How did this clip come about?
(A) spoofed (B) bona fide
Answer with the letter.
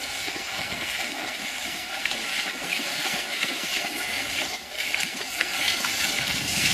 A